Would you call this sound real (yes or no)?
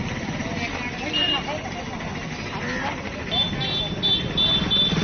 yes